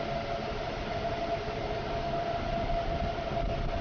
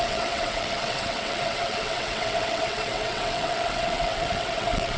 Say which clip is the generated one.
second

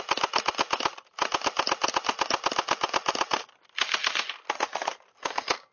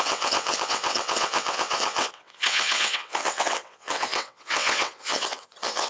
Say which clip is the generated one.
second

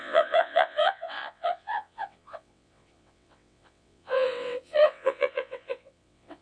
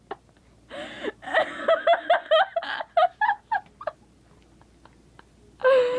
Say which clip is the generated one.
first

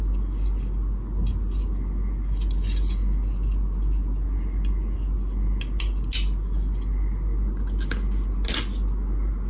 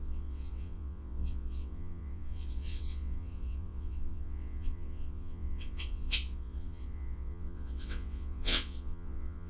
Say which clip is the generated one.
second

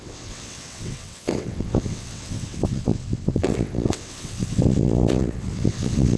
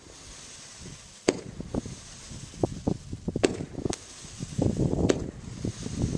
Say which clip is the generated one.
first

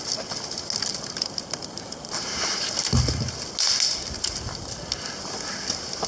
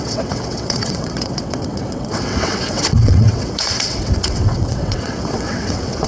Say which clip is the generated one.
second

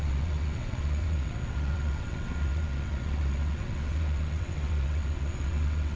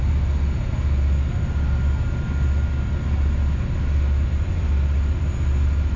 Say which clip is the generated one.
first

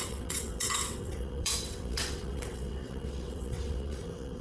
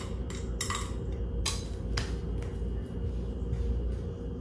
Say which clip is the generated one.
first